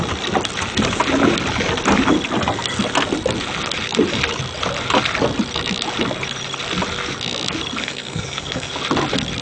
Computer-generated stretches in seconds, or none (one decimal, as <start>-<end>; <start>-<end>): 7.8-8.7